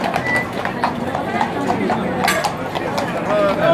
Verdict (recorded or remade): recorded